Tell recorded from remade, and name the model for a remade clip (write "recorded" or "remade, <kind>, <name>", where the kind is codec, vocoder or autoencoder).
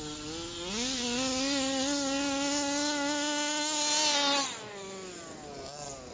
recorded